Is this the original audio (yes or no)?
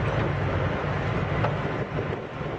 yes